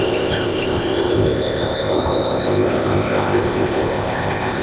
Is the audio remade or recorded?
remade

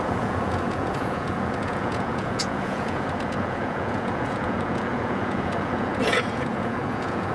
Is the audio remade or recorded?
remade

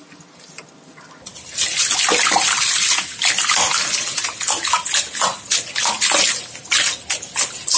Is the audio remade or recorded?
recorded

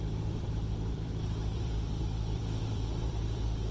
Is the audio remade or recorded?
remade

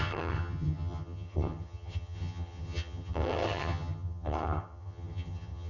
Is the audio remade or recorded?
remade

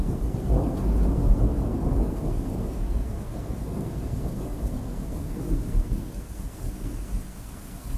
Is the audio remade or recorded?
remade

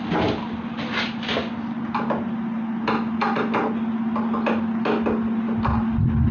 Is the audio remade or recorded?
recorded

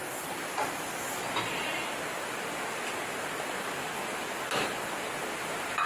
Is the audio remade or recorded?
recorded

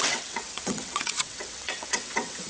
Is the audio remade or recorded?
remade